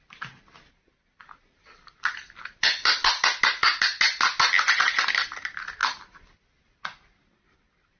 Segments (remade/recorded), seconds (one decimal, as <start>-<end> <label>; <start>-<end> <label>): 0.0-8.0 recorded